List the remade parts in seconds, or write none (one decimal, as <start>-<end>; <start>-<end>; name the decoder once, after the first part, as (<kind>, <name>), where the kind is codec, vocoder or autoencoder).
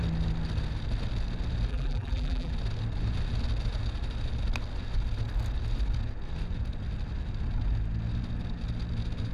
1.7-2.5 (vocoder, BigVGAN v2)